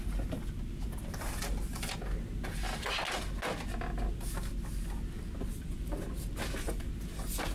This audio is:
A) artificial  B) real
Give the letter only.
B